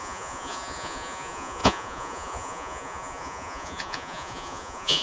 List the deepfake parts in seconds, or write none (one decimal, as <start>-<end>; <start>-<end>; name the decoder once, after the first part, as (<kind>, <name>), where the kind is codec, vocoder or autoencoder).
0.0-5.0 (vocoder, Vocos)